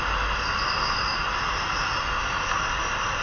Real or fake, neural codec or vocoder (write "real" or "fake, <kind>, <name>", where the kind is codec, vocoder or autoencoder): real